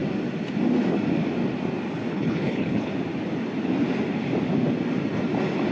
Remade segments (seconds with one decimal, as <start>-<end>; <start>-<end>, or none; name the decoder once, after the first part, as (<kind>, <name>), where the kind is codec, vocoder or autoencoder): 2.1-2.9 (codec, HILCodec)